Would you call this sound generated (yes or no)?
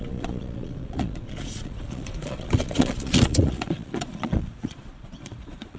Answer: yes